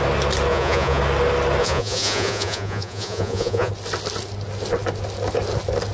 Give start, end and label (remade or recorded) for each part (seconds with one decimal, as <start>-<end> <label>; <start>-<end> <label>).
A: 0.0-0.5 recorded; 0.5-1.0 remade; 1.0-1.6 recorded; 1.6-3.7 remade; 3.7-5.9 recorded